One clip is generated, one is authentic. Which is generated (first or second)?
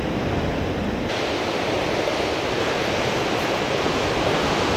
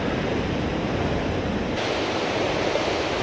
second